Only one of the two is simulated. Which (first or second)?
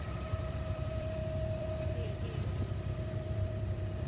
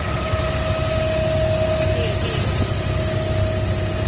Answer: first